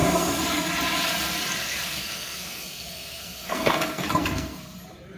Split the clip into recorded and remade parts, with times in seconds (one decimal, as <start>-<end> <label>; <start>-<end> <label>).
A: 0.0-0.7 remade; 0.7-1.6 recorded; 1.6-4.7 remade; 4.7-5.2 recorded